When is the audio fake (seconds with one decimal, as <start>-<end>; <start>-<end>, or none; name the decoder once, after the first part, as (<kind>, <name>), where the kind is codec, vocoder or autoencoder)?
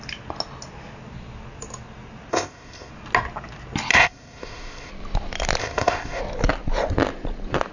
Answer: 2.3-2.9 (codec, ZipCodec); 3.9-4.9; 5.6-6.2